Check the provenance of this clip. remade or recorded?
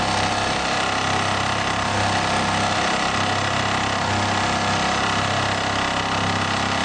recorded